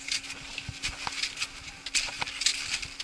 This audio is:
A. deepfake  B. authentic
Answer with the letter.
B